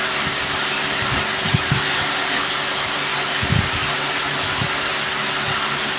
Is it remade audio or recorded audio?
recorded